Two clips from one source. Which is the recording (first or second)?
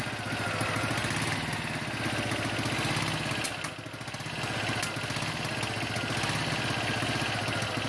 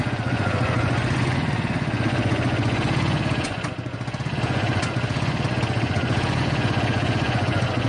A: first